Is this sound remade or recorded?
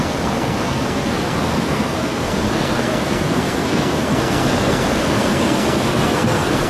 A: remade